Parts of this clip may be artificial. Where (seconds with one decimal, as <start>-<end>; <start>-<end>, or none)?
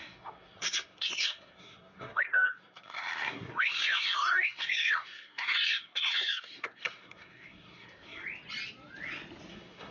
0.0-8.2; 9.5-9.9